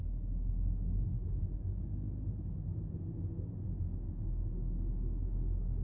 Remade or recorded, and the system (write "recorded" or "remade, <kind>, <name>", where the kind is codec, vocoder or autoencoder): recorded